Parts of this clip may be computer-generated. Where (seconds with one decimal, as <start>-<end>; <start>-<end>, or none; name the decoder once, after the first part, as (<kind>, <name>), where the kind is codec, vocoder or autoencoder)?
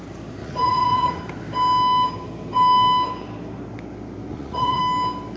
0.4-1.2 (vocoder, Vocos); 4.3-4.8